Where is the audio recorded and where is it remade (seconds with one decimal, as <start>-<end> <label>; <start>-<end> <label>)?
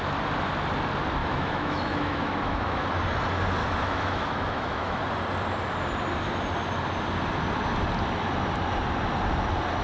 0.0-1.2 recorded; 1.2-2.9 remade; 2.9-3.6 recorded; 3.6-5.0 remade; 5.0-9.8 recorded